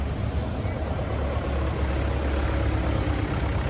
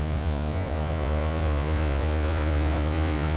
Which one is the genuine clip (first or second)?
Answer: first